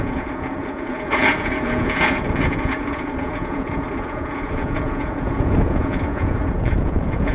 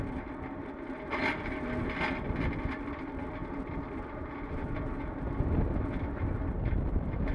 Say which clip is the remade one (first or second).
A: first